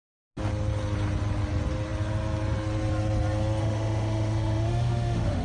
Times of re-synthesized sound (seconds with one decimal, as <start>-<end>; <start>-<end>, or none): 3.6-5.4